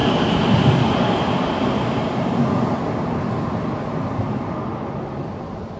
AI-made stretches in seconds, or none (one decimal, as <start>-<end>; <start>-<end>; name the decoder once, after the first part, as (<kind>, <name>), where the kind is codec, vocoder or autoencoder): none